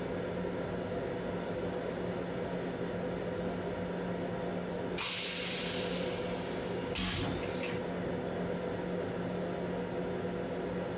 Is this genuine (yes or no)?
yes